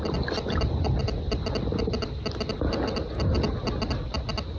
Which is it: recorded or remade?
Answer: recorded